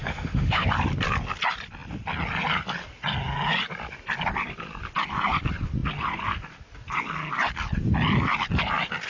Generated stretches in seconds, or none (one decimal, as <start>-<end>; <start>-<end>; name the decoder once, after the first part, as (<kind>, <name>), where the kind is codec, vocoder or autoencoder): 0.0-0.6 (autoencoder, DAC-VAE)